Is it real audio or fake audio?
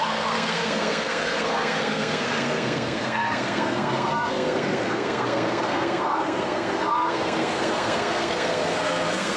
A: fake